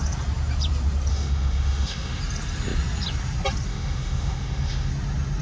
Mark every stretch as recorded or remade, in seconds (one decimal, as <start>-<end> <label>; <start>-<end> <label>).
0.0-1.1 recorded; 1.1-2.2 remade; 2.2-3.7 recorded; 3.7-4.9 remade; 4.9-5.4 recorded